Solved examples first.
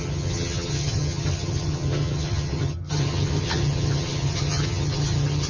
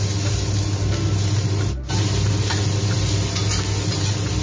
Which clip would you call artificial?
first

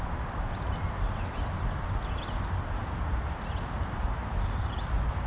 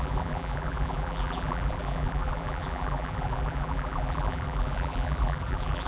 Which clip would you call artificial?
second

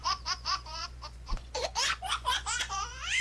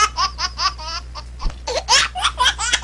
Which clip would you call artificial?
first